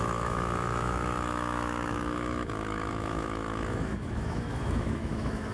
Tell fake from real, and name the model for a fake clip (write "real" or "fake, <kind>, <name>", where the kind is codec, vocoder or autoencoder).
fake, autoencoder, DAC-VAE